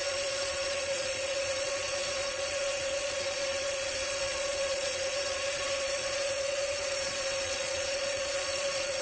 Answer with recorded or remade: remade